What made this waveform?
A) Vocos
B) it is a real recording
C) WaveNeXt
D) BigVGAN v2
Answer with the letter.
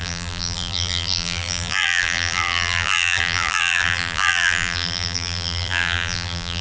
D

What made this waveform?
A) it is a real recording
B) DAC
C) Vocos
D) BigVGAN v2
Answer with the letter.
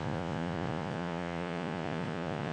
C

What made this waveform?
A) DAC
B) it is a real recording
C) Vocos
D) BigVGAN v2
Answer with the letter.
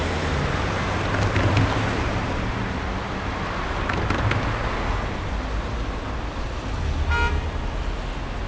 B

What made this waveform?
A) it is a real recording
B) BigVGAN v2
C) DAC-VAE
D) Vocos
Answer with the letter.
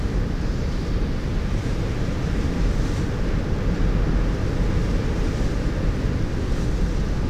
A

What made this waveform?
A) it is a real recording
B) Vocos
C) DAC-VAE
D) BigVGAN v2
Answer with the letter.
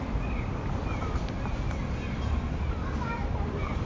D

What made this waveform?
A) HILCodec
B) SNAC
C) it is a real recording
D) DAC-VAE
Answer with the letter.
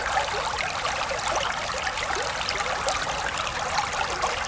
C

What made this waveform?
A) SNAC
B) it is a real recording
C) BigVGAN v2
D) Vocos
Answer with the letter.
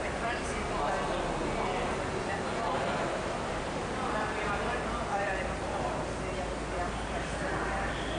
B